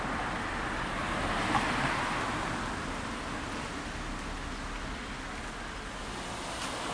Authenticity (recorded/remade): recorded